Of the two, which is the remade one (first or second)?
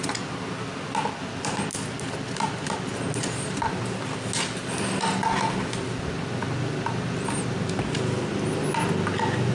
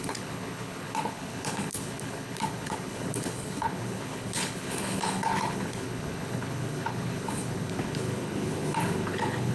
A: second